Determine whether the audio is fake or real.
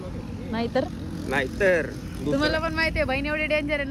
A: real